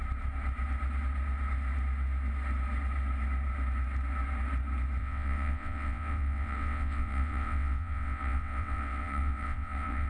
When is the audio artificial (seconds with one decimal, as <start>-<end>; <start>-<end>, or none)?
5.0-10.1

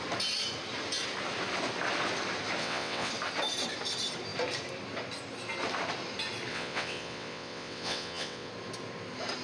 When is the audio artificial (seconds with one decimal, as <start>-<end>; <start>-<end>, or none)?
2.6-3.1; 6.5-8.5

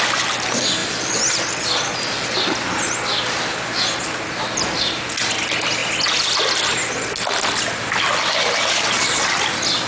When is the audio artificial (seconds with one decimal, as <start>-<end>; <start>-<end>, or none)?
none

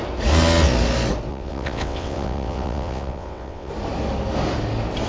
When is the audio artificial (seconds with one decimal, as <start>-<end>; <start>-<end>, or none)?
1.3-3.7

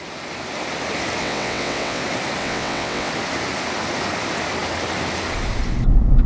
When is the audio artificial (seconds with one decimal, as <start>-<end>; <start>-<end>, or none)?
1.2-2.0; 2.4-3.1

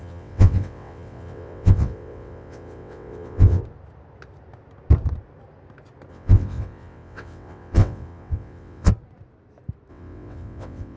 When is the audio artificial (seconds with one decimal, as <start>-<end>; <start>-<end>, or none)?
0.0-3.6; 6.1-8.9; 9.9-11.0

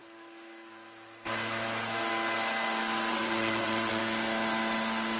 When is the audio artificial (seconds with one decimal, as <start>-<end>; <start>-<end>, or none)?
3.1-4.0

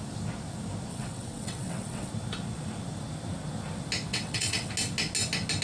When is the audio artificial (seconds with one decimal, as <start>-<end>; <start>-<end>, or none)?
0.9-2.1; 4.1-4.7